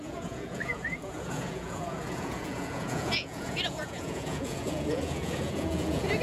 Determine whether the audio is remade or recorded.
remade